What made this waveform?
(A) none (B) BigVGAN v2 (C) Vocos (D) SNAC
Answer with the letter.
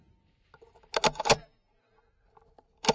A